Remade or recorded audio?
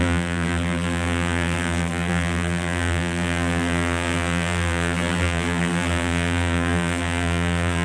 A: remade